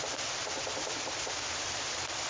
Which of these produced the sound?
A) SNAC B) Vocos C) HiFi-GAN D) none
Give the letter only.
D